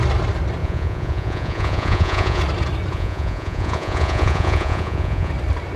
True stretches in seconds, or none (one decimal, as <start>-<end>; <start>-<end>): 0.0-0.6; 2.4-2.9; 5.3-5.8